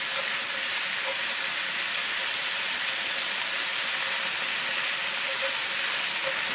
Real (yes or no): yes